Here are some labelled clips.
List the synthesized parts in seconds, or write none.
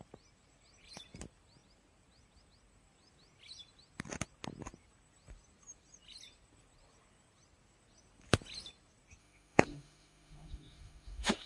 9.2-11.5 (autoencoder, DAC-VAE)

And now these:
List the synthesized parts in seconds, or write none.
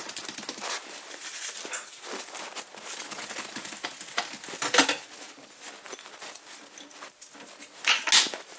none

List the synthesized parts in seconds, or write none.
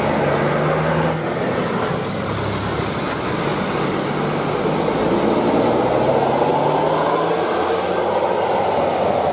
none